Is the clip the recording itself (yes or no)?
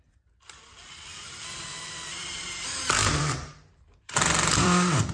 no